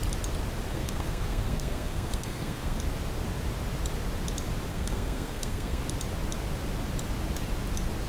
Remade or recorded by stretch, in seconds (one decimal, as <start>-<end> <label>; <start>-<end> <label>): 0.0-0.7 recorded; 0.7-2.8 remade; 2.8-4.7 recorded; 4.7-5.8 remade; 5.8-8.1 recorded